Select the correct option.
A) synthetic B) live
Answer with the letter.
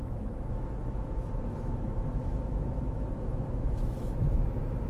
A